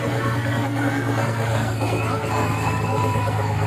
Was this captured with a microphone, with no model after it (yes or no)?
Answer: no